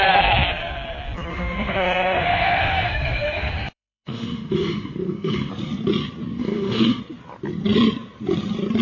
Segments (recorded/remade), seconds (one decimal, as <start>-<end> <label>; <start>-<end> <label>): 0.0-1.3 recorded; 1.3-5.5 remade; 5.5-6.4 recorded; 6.4-7.0 remade; 7.0-8.8 recorded